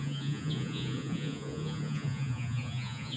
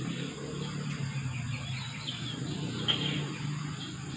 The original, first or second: second